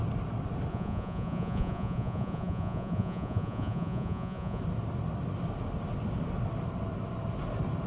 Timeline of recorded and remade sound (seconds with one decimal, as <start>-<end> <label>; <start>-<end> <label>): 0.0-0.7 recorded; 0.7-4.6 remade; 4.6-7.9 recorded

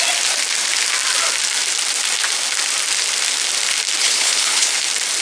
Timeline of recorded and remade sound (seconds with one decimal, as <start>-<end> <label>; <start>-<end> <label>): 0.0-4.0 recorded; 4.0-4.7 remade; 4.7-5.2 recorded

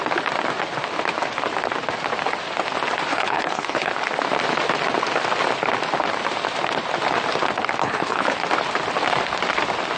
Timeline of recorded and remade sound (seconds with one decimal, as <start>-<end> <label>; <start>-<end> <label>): 0.0-3.1 recorded; 3.1-3.9 remade; 3.9-7.8 recorded; 7.8-8.4 remade; 8.4-10.0 recorded

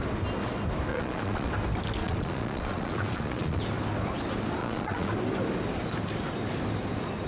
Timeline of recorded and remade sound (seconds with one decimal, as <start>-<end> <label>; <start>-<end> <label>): 0.0-0.9 recorded; 0.9-1.5 remade; 1.5-2.0 recorded; 2.0-3.6 remade; 3.6-4.6 recorded; 4.6-5.1 remade; 5.1-7.3 recorded

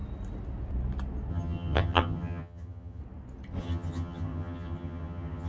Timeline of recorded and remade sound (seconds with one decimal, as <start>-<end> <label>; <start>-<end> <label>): 0.0-1.3 recorded; 1.3-3.0 remade; 3.0-3.6 recorded; 3.6-5.5 remade

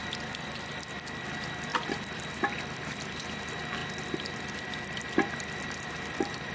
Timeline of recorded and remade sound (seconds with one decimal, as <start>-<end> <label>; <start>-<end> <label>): 0.0-0.7 remade; 0.7-1.7 recorded; 1.7-2.2 remade; 2.2-3.8 recorded; 3.8-5.3 remade; 5.3-6.5 recorded